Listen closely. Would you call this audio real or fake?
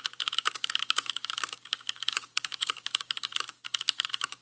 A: fake